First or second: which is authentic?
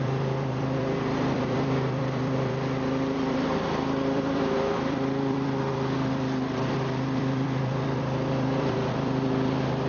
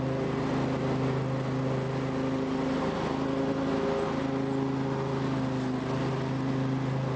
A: second